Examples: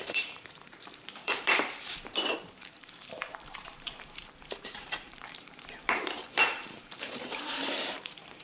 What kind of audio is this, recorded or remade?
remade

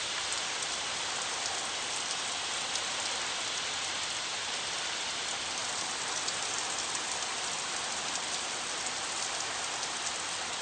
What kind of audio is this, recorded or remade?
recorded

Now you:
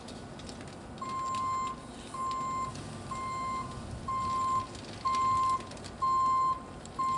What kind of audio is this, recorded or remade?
recorded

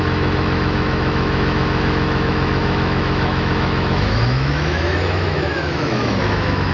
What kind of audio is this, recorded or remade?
remade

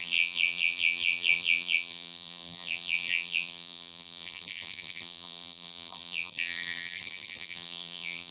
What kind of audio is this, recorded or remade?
remade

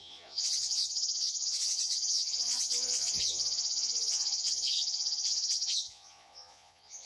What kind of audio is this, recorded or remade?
remade